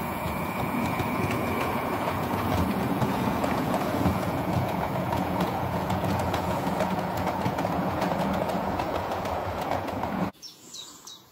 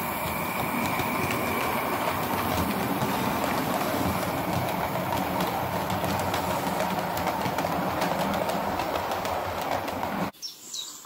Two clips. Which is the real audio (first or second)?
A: second